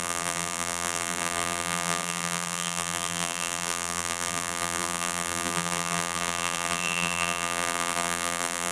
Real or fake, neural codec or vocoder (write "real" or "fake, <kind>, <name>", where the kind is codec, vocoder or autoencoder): fake, vocoder, BigVGAN v2